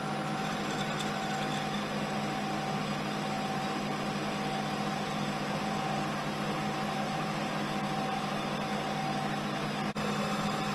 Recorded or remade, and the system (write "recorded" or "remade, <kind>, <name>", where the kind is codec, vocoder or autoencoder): recorded